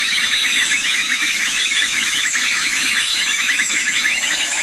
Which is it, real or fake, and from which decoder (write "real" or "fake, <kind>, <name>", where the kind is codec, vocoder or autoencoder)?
fake, autoencoder, DAC-VAE